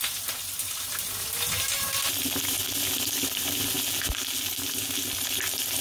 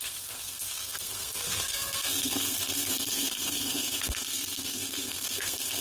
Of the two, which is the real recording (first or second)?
first